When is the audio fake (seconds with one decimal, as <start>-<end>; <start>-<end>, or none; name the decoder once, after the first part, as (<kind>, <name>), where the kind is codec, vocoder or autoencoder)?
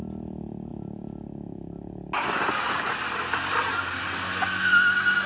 none